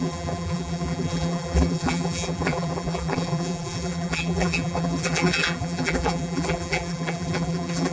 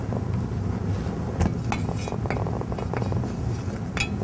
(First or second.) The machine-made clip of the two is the first